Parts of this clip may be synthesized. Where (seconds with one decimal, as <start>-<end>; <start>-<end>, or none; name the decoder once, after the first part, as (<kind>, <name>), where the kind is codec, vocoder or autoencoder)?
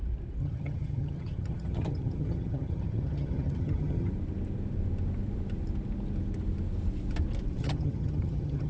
0.4-4.1 (vocoder, HiFi-GAN); 7.6-8.7